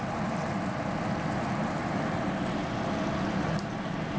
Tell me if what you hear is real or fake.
real